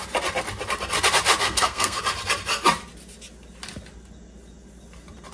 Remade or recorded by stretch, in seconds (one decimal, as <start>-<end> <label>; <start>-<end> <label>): 0.0-1.4 recorded; 1.4-2.0 remade; 2.0-5.3 recorded